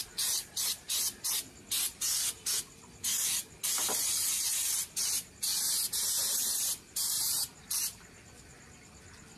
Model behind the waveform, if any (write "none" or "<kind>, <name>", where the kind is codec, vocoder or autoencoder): none